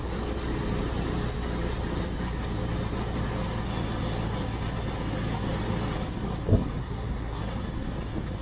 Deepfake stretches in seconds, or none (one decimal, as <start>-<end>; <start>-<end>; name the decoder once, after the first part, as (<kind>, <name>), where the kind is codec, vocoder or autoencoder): 6.8-7.4 (codec, SNAC)